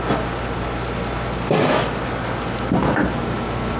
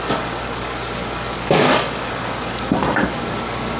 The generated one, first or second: second